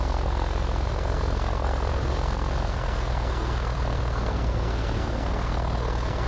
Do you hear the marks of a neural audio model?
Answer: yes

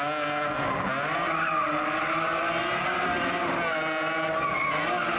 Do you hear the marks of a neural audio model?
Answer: no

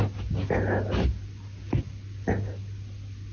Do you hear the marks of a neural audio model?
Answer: no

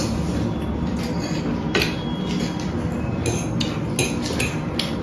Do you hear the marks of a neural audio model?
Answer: no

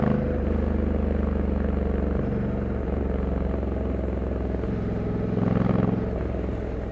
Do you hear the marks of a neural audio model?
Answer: no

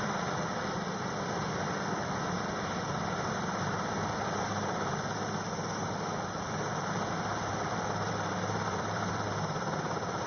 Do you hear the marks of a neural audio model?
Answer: yes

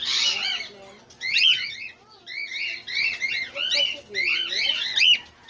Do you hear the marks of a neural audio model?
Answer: no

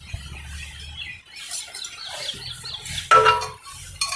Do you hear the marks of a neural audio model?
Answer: no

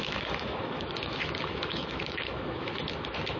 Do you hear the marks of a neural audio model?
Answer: yes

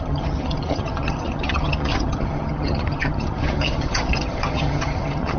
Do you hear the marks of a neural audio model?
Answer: yes